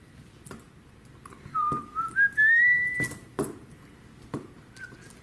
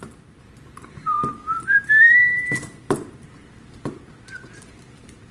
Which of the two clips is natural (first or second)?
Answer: first